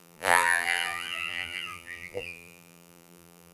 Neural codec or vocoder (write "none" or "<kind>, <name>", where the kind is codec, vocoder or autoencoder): vocoder, BigVGAN v2